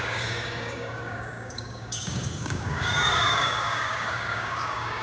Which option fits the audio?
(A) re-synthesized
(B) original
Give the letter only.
A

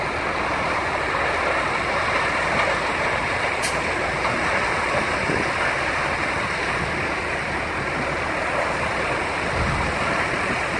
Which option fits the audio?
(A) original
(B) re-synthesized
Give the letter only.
A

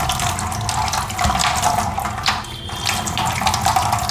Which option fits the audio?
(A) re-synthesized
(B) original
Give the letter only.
B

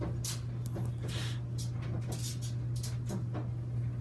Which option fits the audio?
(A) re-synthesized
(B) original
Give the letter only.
B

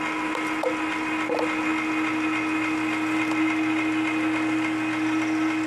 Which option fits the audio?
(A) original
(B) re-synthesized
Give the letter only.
A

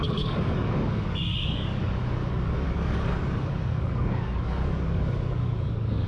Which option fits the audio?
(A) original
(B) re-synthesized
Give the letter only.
B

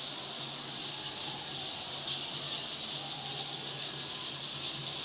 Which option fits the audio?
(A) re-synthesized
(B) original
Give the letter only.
B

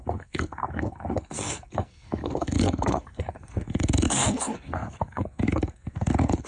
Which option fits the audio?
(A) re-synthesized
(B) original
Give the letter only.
A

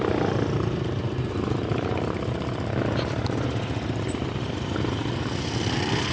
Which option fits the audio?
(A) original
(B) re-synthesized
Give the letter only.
A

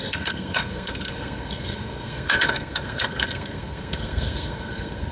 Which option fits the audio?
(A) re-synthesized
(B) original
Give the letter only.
A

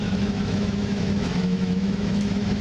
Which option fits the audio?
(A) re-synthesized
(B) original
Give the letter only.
A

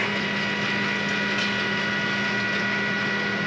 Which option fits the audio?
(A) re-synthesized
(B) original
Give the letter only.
B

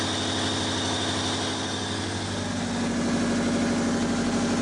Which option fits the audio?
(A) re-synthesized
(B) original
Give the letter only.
B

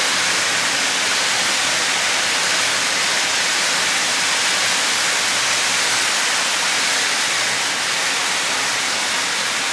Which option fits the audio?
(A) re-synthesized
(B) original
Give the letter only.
B